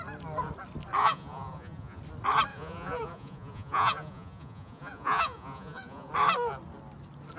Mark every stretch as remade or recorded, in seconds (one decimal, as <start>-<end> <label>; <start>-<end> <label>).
0.0-1.0 recorded; 1.0-2.0 remade; 2.0-2.5 recorded; 2.5-6.1 remade; 6.1-7.4 recorded